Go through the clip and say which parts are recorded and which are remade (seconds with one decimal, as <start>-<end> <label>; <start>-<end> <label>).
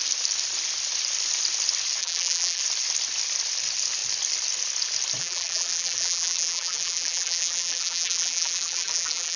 0.0-2.0 recorded; 2.0-2.6 remade; 2.6-5.2 recorded; 5.2-9.4 remade